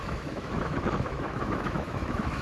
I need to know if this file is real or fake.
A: fake